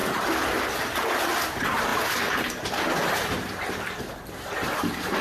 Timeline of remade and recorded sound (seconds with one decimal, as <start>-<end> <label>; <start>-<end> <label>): 0.0-5.2 recorded